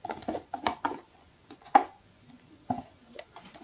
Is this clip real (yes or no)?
no